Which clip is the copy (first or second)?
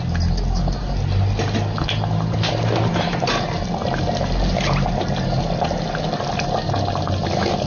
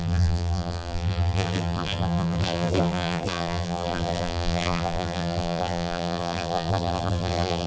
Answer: second